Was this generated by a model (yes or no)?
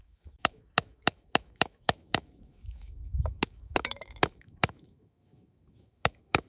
yes